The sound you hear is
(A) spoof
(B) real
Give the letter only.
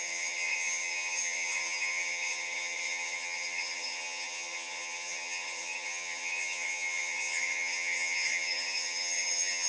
A